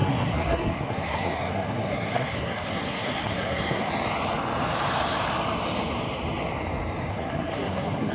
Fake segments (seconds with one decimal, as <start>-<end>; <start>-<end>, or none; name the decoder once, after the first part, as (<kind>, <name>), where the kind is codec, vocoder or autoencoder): 0.0-3.9 (codec, SNAC); 7.1-8.1